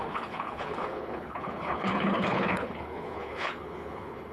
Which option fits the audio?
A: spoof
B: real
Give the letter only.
A